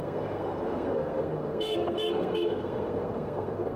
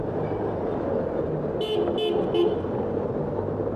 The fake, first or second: first